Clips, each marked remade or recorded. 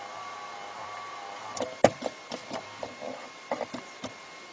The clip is remade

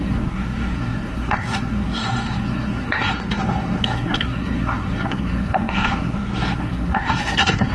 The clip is remade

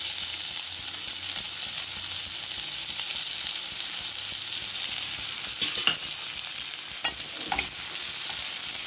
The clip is recorded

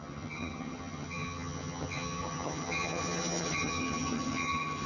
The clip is remade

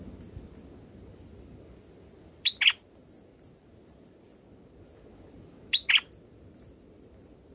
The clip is recorded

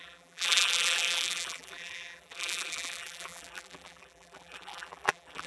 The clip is remade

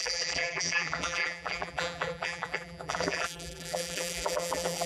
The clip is remade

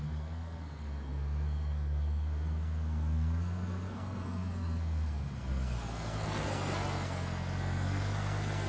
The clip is remade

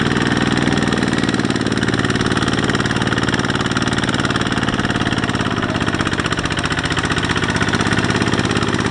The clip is recorded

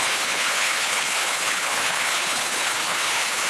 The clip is remade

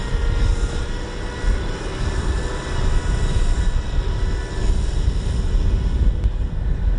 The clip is recorded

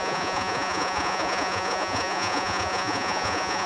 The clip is remade